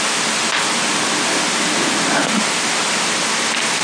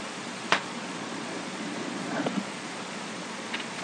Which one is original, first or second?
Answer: first